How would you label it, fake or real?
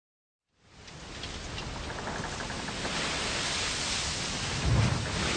real